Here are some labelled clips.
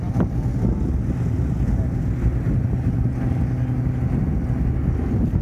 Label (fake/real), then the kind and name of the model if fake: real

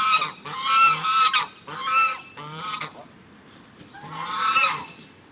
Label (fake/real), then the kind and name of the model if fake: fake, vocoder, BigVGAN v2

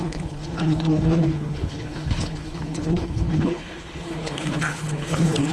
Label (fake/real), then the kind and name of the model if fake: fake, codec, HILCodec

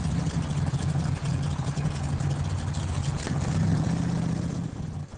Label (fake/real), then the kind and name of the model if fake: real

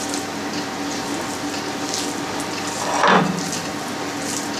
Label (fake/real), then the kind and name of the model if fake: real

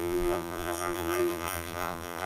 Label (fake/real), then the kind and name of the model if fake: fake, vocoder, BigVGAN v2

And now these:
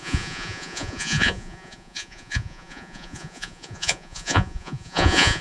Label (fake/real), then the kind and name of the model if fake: fake, vocoder, Vocos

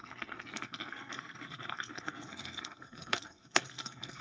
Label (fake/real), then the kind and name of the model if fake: fake, codec, SNAC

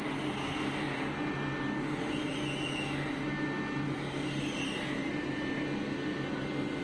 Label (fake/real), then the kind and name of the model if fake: real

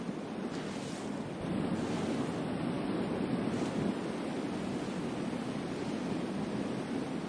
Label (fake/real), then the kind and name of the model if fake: real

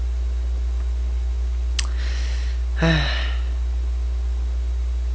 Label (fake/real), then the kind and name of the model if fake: real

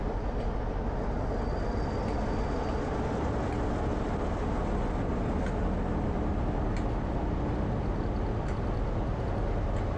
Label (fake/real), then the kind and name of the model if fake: real